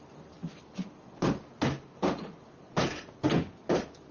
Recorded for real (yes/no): yes